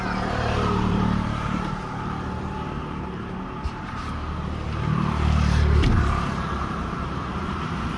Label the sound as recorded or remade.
remade